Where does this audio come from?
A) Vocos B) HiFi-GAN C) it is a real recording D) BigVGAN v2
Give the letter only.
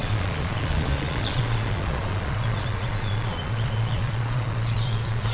A